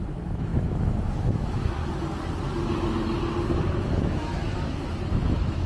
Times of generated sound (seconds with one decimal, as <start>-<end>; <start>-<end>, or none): 0.0-1.8; 3.7-4.3; 5.1-5.7